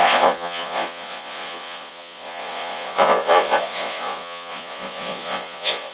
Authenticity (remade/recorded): remade